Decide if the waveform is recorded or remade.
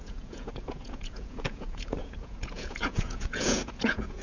remade